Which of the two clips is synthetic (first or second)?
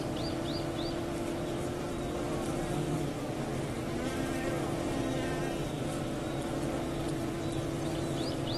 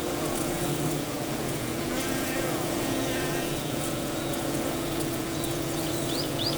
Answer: second